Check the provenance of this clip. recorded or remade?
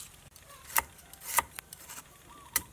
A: remade